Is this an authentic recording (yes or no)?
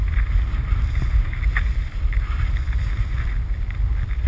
yes